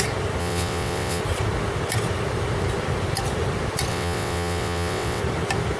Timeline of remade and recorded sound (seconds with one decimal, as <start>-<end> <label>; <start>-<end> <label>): 0.0-0.4 recorded; 0.4-1.2 remade; 1.2-3.9 recorded; 3.9-5.2 remade; 5.2-5.8 recorded